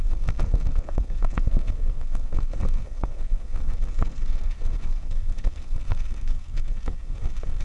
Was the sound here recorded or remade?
remade